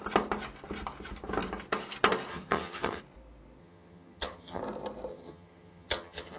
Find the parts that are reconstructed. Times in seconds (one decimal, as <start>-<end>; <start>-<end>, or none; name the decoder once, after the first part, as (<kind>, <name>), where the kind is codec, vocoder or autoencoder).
2.3-3.0 (vocoder, HiFi-GAN); 3.6-4.6; 5.1-6.4